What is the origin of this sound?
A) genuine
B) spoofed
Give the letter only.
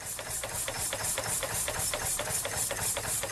B